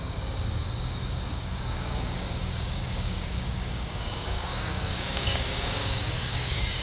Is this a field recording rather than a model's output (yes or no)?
no